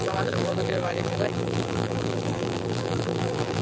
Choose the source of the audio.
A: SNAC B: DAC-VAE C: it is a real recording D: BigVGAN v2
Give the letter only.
D